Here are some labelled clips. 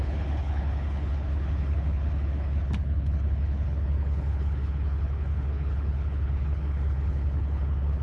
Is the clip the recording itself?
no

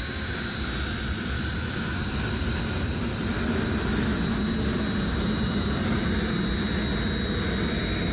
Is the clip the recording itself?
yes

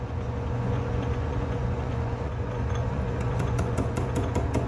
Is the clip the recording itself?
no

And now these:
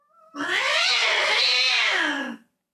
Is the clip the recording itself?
yes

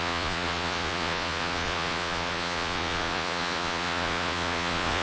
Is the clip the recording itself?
no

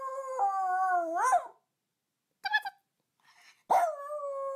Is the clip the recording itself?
yes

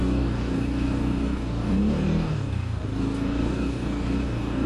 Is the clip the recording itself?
no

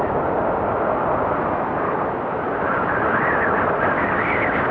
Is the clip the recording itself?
yes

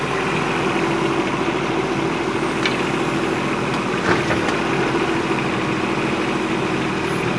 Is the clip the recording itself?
yes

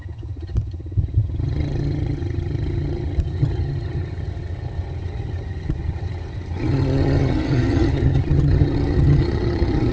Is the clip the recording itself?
no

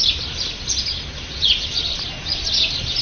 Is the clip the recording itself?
yes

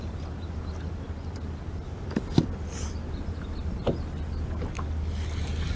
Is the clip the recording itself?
yes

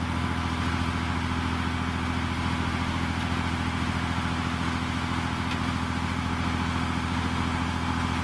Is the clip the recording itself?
yes